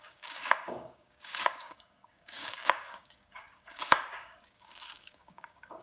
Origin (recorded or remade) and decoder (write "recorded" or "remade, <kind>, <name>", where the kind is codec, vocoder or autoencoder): remade, codec, DAC